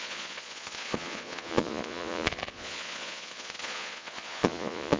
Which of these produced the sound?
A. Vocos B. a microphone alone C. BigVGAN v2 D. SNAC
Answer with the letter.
A